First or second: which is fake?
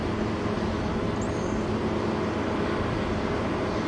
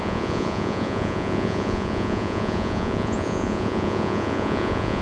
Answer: second